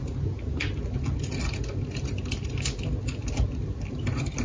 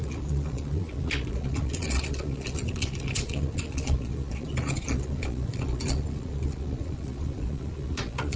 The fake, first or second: second